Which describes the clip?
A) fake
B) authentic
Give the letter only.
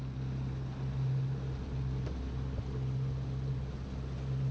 B